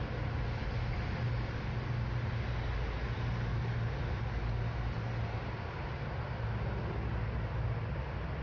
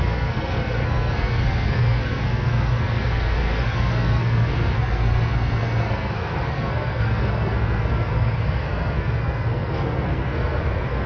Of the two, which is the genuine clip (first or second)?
first